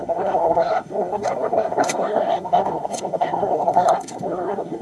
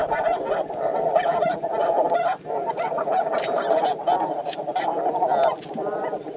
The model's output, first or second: first